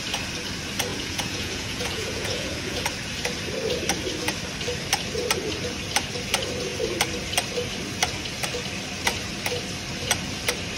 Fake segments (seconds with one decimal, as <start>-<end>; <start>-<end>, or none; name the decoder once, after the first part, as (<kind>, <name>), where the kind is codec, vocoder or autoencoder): 0.9-2.8 (vocoder, Vocos)